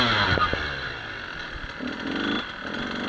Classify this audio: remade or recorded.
recorded